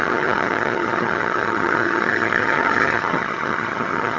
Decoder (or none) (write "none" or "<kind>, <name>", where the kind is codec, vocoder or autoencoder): vocoder, HiFi-GAN